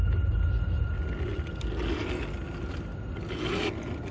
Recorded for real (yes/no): yes